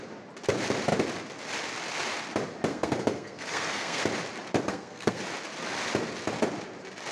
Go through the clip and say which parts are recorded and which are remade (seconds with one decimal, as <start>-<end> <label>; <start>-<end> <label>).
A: 0.0-2.7 recorded; 2.7-4.0 remade; 4.0-4.7 recorded; 4.7-5.2 remade; 5.2-7.1 recorded

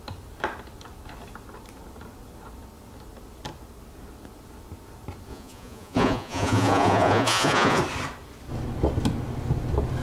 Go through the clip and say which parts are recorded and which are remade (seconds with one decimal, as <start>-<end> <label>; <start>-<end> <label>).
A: 0.0-5.3 recorded; 5.3-7.8 remade; 7.8-10.0 recorded